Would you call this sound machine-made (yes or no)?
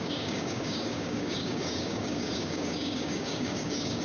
yes